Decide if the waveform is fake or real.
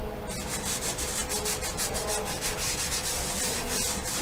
real